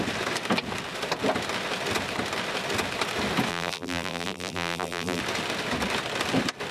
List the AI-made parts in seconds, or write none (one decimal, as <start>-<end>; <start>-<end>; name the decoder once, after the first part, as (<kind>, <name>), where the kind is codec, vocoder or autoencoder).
3.5-5.2 (vocoder, BigVGAN v2)